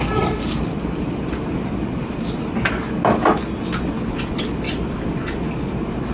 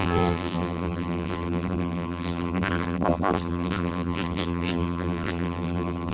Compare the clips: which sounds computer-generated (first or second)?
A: second